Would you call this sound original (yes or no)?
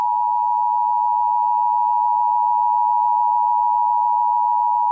yes